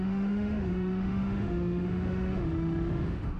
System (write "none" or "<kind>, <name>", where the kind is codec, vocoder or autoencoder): autoencoder, DAC-VAE